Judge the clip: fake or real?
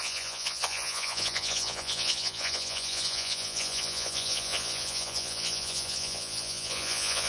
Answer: fake